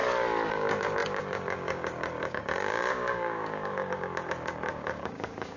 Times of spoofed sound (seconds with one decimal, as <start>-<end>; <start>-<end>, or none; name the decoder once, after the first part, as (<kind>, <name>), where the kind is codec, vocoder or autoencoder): 0.5-5.6 (codec, DAC)